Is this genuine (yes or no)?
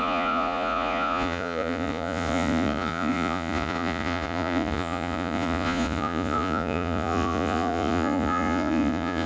no